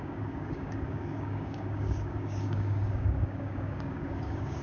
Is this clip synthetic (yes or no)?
yes